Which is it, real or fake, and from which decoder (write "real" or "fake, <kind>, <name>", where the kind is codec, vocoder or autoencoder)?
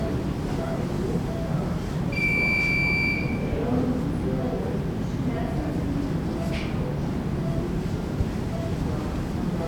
real